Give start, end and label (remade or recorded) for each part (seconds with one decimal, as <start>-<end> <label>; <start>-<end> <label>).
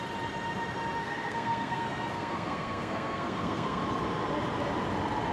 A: 0.0-1.0 recorded; 1.0-3.8 remade; 3.8-5.3 recorded